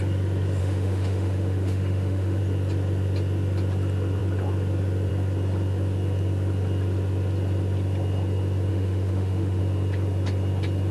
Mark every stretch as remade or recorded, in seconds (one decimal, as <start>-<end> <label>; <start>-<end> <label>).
0.0-0.6 recorded; 0.6-2.4 remade; 2.4-8.7 recorded; 8.7-9.6 remade; 9.6-10.9 recorded